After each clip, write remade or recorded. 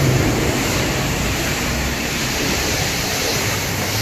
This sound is remade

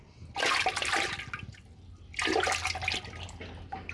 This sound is recorded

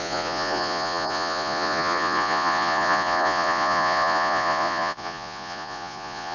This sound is remade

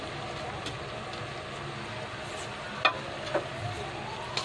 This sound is recorded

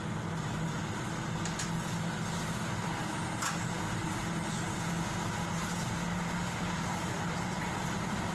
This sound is recorded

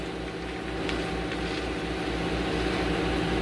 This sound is recorded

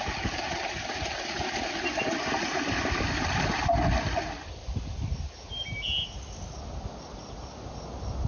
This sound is recorded